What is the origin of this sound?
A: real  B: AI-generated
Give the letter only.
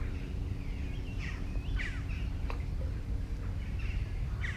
B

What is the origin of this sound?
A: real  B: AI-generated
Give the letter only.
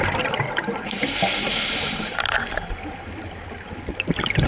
B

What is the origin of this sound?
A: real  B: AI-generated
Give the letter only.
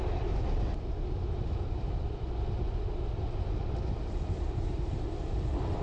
B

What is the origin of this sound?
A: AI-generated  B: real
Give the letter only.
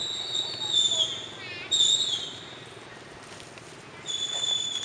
B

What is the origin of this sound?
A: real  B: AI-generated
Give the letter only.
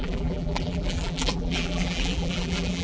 B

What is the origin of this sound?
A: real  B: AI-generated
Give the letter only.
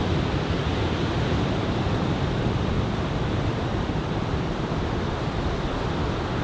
B